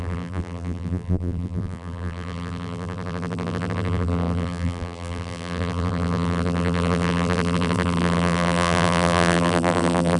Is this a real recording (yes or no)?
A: no